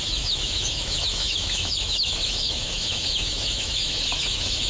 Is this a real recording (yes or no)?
no